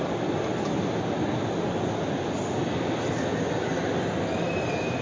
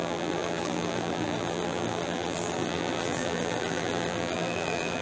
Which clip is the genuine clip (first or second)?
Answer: first